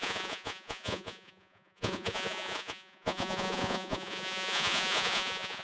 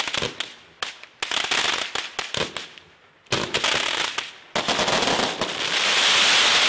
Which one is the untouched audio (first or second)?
second